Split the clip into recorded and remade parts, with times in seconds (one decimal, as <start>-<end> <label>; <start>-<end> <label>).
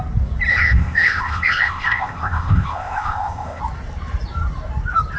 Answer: 0.0-0.5 recorded; 0.5-3.6 remade; 3.6-5.2 recorded